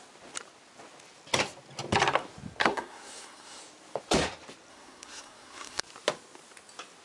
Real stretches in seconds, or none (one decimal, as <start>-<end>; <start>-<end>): 0.0-2.6; 3.6-4.7; 5.8-7.0